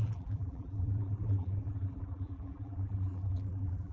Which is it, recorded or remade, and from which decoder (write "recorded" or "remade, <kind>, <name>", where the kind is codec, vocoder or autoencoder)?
remade, vocoder, BigVGAN v2